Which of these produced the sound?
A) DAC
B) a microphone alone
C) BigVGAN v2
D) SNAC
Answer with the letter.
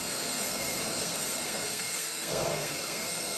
D